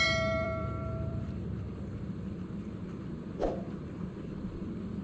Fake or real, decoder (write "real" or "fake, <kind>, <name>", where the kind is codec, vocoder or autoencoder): fake, vocoder, BigVGAN v2